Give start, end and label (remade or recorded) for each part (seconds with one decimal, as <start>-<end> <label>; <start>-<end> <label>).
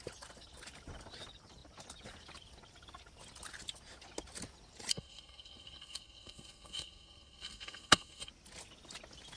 0.0-4.9 recorded; 4.9-8.3 remade; 8.3-9.4 recorded